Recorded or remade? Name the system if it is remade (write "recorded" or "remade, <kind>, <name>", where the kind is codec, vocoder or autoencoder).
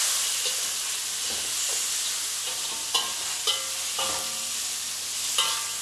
recorded